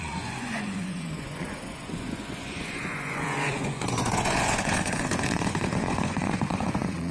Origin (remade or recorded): remade